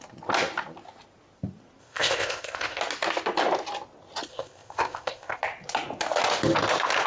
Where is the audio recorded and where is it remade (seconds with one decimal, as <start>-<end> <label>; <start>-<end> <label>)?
0.0-1.8 recorded; 1.8-2.8 remade; 2.8-4.3 recorded; 4.3-5.4 remade; 5.4-7.1 recorded